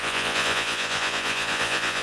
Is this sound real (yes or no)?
no